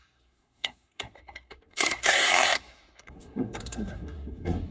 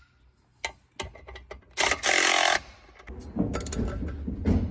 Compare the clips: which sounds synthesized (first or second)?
first